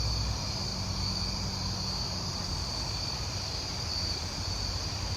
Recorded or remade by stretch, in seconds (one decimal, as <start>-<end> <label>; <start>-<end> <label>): 0.0-5.2 recorded